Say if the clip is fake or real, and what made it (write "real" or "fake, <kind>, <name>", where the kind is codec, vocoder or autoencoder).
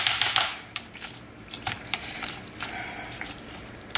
fake, vocoder, BigVGAN v2